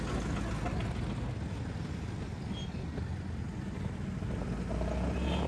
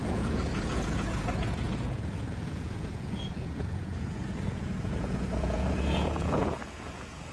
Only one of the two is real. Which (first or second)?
first